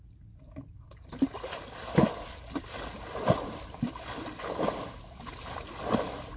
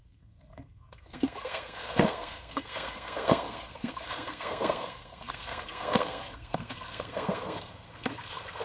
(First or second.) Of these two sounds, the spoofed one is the second